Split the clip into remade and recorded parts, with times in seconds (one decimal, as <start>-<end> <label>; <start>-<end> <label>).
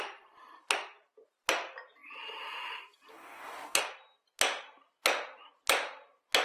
0.0-3.1 recorded; 3.1-3.8 remade; 3.8-6.4 recorded